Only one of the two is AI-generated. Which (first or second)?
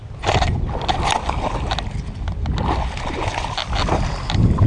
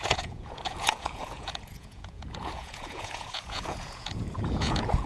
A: second